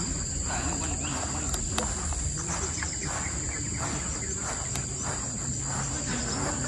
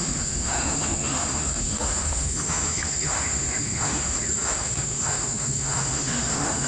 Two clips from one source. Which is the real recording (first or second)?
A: first